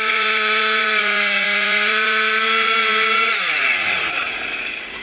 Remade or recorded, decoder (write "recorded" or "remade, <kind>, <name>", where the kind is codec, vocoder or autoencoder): remade, vocoder, Vocos